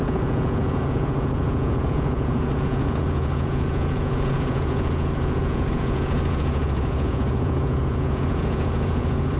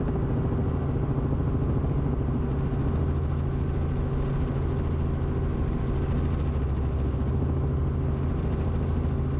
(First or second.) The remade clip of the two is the first